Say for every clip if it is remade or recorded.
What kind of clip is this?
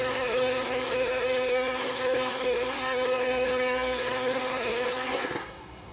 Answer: remade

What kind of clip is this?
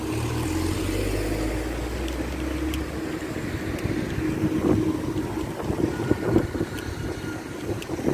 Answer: recorded